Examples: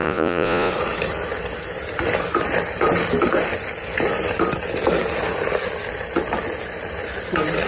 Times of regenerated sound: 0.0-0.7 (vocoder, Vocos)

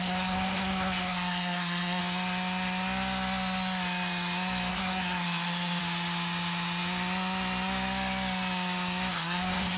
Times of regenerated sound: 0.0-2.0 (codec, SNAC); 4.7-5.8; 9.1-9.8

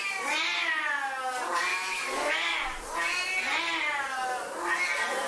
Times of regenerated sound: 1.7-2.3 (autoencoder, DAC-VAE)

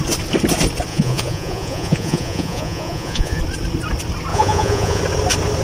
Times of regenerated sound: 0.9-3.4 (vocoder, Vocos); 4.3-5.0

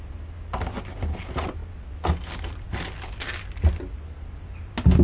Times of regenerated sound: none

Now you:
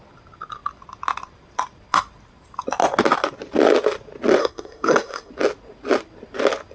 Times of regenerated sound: 4.4-5.3 (codec, SNAC)

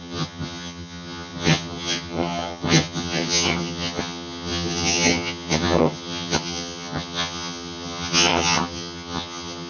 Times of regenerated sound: 0.0-9.7 (vocoder, HiFi-GAN)

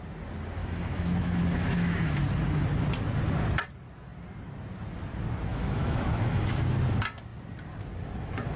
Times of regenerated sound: 0.6-2.2 (autoencoder, DAC-VAE); 5.5-6.6